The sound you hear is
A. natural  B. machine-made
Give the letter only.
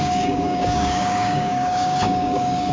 B